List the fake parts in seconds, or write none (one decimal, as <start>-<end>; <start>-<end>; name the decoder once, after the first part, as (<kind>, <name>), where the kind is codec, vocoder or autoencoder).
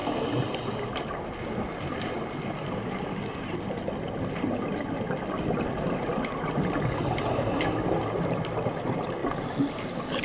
none